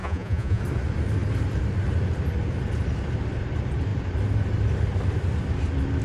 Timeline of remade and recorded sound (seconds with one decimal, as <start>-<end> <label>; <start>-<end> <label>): 0.0-0.6 remade; 0.6-6.0 recorded